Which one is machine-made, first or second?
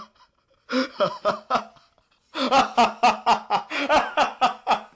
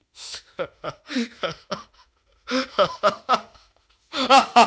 second